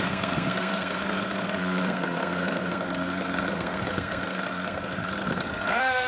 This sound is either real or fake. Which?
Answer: fake